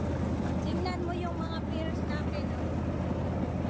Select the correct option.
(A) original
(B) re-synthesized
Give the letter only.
A